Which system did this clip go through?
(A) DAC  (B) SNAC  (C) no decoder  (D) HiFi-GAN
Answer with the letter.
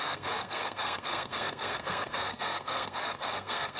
B